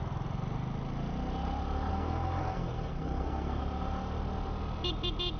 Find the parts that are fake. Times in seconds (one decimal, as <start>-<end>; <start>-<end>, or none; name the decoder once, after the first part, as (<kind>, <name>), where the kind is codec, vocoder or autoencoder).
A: 1.9-3.6 (codec, SNAC)